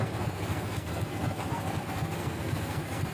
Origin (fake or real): fake